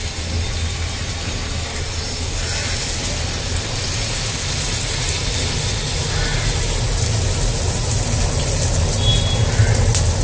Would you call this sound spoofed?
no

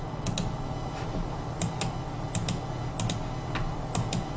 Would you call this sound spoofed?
no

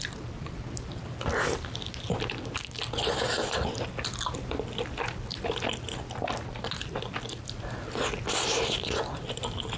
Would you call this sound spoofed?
no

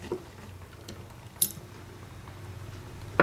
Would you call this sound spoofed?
yes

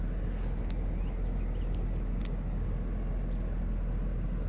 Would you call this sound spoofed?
no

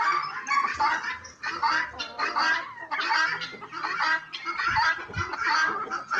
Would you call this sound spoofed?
no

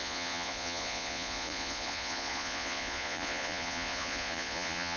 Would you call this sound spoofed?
yes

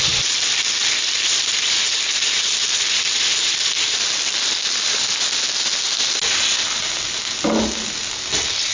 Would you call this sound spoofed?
no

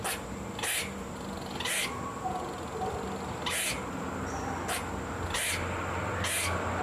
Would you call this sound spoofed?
no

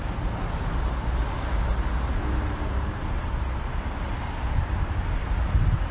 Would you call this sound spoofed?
no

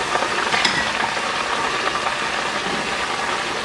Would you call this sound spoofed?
no